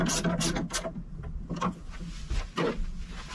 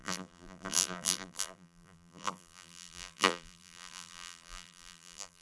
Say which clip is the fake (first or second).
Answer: second